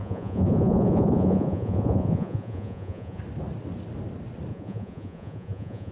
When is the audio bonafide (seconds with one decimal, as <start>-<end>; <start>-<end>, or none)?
3.2-4.5